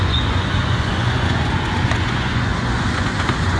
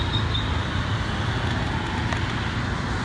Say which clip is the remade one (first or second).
first